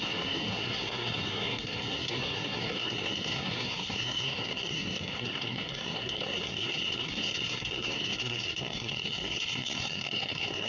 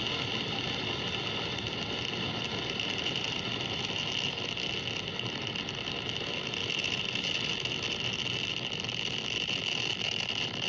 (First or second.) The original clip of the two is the second